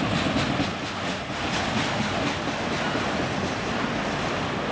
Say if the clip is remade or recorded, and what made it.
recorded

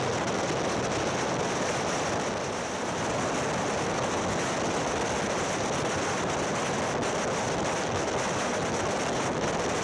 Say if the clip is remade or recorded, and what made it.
recorded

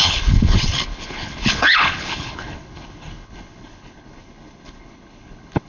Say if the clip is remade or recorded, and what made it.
remade, codec, HILCodec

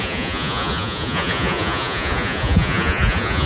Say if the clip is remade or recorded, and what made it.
remade, vocoder, Vocos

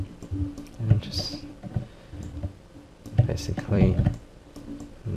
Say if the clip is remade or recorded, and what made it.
remade, vocoder, BigVGAN v2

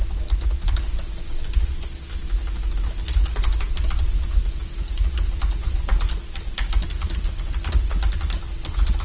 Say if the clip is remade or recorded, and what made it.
recorded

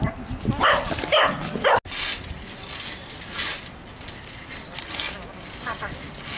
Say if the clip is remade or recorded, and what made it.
recorded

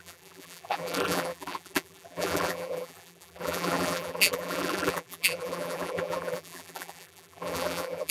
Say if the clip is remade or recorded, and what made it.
remade, vocoder, BigVGAN v2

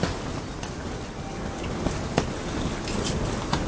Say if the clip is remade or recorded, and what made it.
recorded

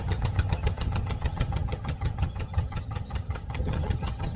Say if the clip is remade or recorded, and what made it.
remade, vocoder, HiFi-GAN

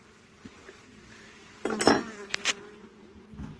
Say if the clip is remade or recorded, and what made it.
recorded